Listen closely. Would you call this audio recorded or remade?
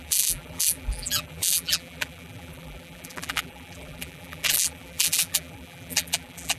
remade